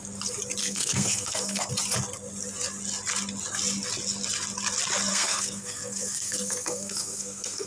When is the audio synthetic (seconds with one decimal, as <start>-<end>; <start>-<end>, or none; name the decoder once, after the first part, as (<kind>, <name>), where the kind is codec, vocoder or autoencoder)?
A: 0.6-1.7 (codec, SNAC); 5.1-7.7